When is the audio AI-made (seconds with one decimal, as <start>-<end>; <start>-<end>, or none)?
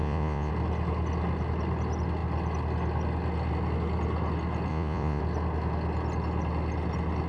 0.0-0.5; 4.7-5.2